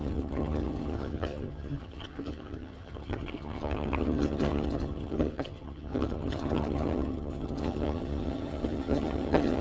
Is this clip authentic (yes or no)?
no